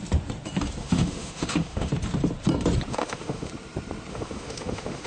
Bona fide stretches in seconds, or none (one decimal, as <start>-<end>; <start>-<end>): 0.0-0.8; 1.9-2.9; 3.5-4.1